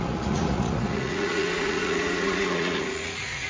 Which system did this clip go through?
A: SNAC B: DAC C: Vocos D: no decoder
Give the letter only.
C